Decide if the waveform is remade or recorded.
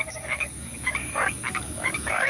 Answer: remade